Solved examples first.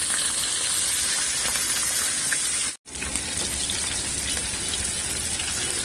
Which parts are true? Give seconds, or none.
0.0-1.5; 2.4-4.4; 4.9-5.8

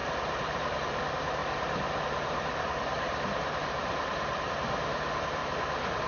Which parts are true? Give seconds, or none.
1.0-1.4; 4.5-5.4

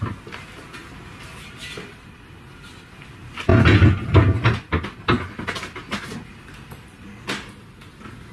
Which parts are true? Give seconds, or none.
0.0-0.8; 2.7-8.3

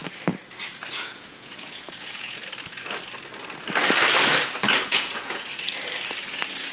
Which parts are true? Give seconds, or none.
0.0-0.9; 2.4-4.8; 5.5-6.7